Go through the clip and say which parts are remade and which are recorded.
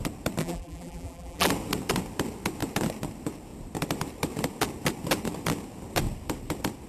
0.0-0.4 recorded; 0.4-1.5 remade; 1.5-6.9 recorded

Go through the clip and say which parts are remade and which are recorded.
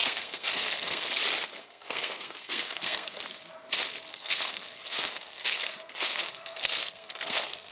0.0-1.1 remade; 1.1-1.6 recorded; 1.6-3.2 remade; 3.2-4.1 recorded; 4.1-7.7 remade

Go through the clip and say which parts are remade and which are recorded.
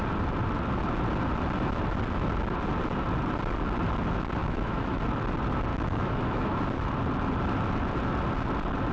0.0-4.4 recorded; 4.4-5.0 remade; 5.0-5.7 recorded; 5.7-6.6 remade; 6.6-8.9 recorded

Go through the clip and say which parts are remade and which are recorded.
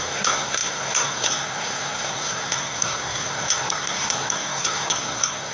0.0-5.5 remade